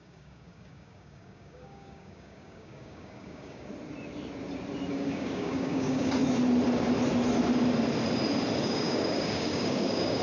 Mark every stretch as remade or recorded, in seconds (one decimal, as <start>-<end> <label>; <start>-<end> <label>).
0.0-3.7 remade; 3.7-4.9 recorded; 4.9-6.2 remade; 6.2-8.6 recorded; 8.6-10.2 remade